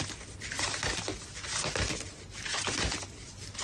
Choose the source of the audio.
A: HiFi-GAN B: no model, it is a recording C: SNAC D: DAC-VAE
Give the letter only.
B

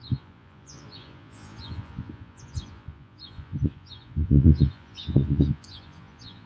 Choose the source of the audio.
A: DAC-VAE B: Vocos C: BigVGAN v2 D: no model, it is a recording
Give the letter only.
B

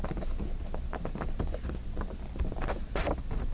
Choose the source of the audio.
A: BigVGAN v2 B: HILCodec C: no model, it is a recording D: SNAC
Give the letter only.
A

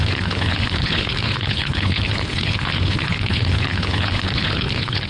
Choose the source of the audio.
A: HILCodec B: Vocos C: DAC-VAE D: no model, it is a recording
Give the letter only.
A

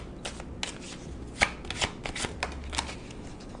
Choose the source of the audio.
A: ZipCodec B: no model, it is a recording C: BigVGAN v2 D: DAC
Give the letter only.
B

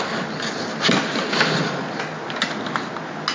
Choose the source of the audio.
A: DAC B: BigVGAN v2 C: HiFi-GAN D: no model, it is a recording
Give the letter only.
D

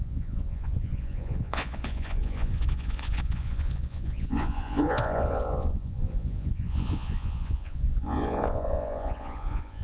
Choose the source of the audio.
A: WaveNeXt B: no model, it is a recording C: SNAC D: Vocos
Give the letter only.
D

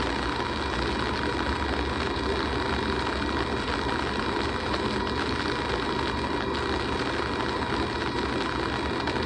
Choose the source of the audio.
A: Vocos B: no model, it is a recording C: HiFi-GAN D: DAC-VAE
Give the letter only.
B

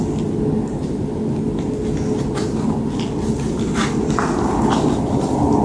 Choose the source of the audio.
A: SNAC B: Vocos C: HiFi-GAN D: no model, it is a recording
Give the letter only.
D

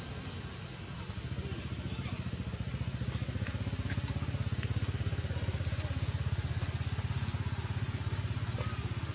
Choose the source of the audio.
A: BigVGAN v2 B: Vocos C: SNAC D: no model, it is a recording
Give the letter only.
D